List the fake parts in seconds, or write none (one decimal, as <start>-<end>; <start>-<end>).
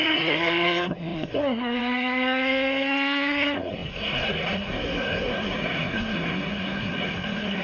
0.0-7.6